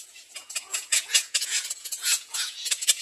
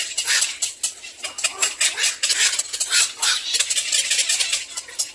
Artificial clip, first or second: first